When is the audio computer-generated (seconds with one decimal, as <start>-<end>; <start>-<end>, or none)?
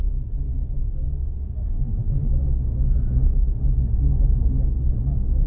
1.7-2.3